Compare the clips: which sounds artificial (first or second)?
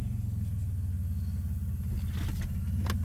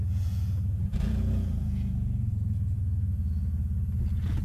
second